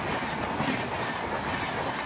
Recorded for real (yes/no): yes